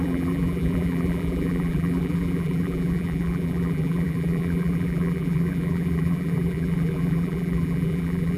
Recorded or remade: remade